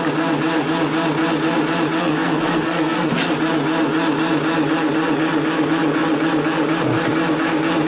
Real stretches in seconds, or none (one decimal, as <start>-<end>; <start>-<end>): 0.0-2.0; 3.1-7.9